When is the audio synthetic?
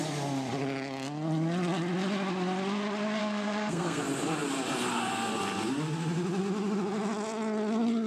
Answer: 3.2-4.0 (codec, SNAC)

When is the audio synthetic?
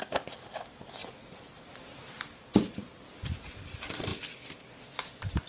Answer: 1.0-3.1 (vocoder, BigVGAN v2)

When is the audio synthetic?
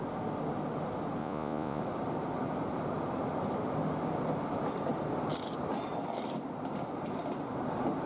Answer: 1.2-1.8 (vocoder, Vocos)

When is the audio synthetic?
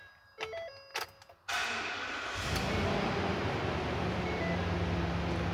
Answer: none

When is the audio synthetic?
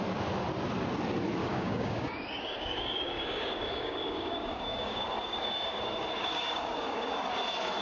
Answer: 1.4-5.8 (codec, DAC); 6.2-7.1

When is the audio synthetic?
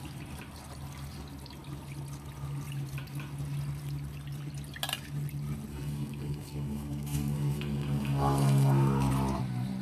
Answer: 5.7-9.1 (codec, SNAC)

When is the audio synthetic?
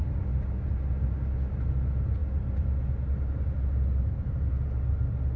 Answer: none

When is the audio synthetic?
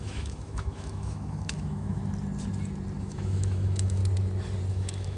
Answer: 0.0-2.0 (autoencoder, DAC-VAE); 3.0-4.0; 4.7-5.2